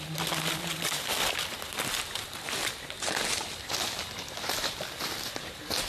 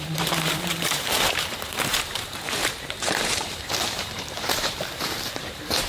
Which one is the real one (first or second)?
first